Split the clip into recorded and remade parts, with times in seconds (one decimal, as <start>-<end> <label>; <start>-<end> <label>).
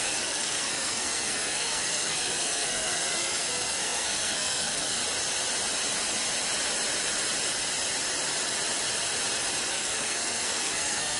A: 0.0-5.0 remade; 5.0-9.7 recorded; 9.7-11.2 remade